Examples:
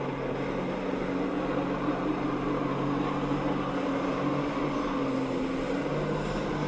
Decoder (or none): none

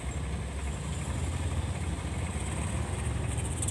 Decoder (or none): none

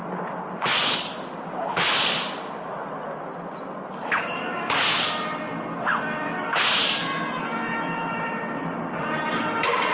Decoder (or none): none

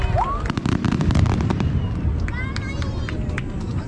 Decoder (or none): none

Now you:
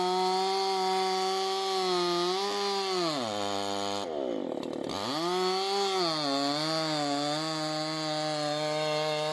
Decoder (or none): none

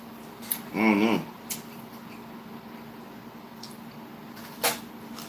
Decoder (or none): none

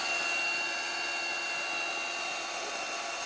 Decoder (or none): none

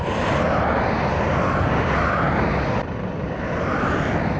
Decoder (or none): none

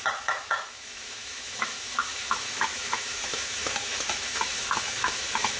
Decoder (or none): autoencoder, DAC-VAE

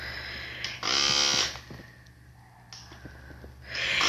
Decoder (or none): none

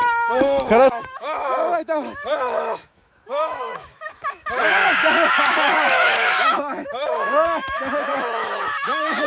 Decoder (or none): autoencoder, DAC-VAE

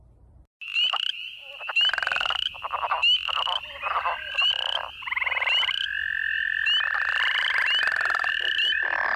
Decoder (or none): none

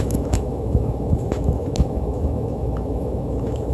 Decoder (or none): autoencoder, DAC-VAE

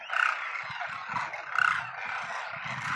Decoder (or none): none